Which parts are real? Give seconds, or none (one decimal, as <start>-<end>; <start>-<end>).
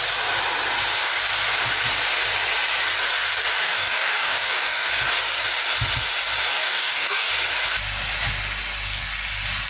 0.0-3.6; 4.9-6.5; 7.3-9.7